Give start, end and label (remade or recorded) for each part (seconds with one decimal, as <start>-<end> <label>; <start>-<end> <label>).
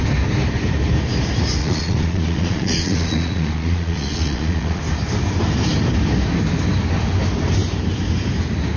0.0-1.6 recorded; 1.6-4.8 remade; 4.8-8.8 recorded